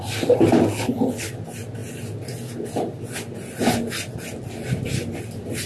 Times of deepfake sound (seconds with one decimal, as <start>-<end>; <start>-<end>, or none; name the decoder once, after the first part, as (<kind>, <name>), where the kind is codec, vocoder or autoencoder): 0.7-1.3 (codec, HILCodec)